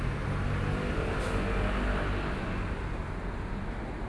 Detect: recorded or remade recorded